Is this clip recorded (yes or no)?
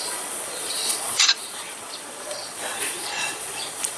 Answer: no